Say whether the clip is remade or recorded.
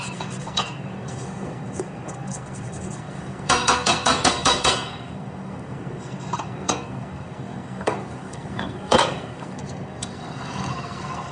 remade